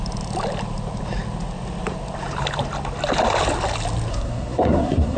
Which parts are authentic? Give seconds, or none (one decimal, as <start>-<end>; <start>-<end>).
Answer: 0.0-4.1